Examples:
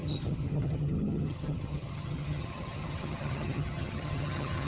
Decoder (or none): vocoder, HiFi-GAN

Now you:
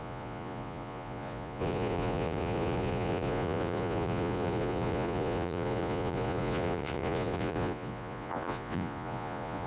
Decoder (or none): vocoder, Vocos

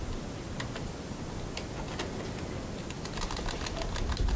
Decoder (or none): none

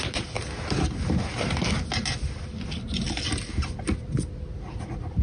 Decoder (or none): none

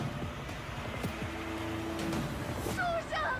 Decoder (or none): none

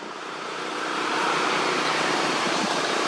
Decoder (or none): vocoder, BigVGAN v2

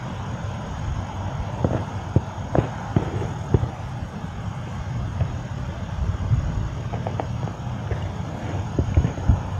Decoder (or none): none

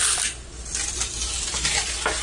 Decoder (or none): none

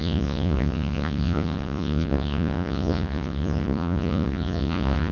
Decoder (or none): vocoder, Vocos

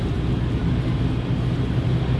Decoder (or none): none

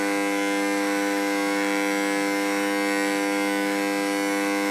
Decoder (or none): autoencoder, DAC-VAE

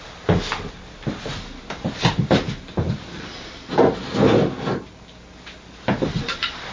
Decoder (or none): none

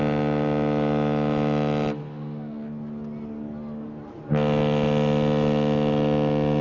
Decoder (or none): none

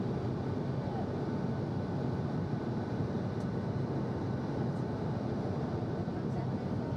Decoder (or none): none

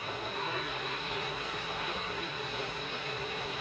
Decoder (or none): codec, SNAC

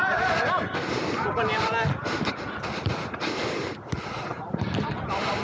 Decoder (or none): none